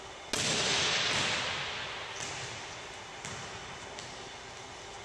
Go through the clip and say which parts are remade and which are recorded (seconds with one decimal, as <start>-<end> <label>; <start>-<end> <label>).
0.0-0.7 recorded; 0.7-1.4 remade; 1.4-5.0 recorded